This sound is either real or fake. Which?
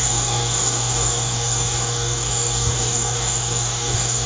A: fake